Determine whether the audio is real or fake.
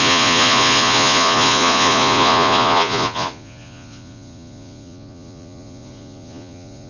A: fake